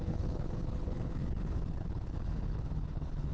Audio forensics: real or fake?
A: fake